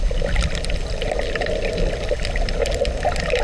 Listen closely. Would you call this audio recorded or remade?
recorded